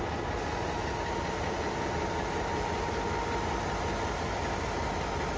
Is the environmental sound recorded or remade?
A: recorded